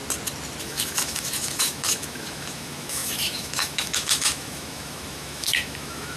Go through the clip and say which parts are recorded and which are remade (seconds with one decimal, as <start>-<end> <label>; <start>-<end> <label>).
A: 0.0-0.6 recorded; 0.6-6.2 remade

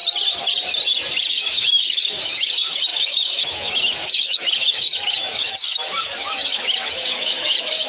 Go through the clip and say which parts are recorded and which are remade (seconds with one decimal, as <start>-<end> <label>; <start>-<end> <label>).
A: 0.0-1.3 recorded; 1.3-7.9 remade

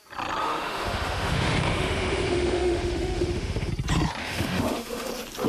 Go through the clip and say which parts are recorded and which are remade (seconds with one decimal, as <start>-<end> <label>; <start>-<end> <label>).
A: 0.0-0.4 recorded; 0.4-3.7 remade; 3.7-4.2 recorded; 4.2-5.1 remade; 5.1-5.5 recorded

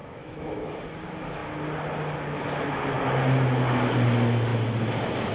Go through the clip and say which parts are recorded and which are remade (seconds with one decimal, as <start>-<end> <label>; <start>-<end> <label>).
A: 0.0-0.8 remade; 0.8-5.3 recorded

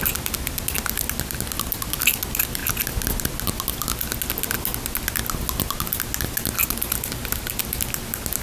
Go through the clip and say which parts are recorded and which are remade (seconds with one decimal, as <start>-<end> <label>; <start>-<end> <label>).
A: 0.0-8.4 recorded

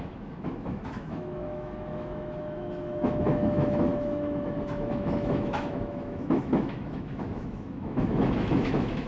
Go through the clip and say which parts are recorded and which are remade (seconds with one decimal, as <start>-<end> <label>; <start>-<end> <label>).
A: 0.0-9.1 remade